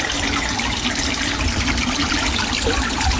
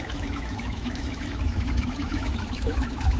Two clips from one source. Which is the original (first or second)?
first